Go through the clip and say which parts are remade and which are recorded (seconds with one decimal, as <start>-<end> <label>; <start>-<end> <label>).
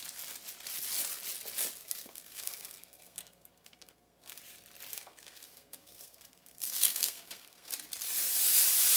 0.0-1.8 recorded; 1.8-4.4 remade; 4.4-4.9 recorded; 4.9-7.7 remade; 7.7-9.0 recorded